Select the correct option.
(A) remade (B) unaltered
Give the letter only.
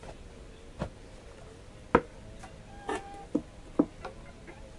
B